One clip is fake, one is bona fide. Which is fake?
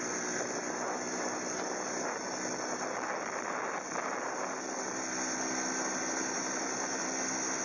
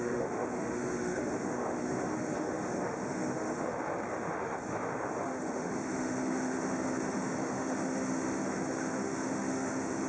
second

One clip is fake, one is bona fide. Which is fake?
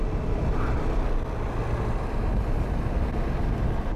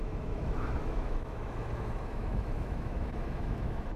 second